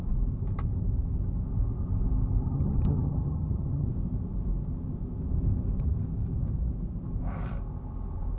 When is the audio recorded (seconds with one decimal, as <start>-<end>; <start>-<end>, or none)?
0.0-2.4; 3.9-8.4